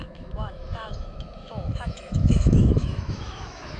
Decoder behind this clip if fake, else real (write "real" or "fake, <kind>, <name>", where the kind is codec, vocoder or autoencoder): fake, autoencoder, DAC-VAE